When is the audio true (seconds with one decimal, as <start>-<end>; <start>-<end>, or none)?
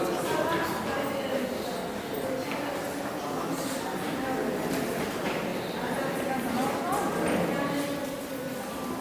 0.0-9.0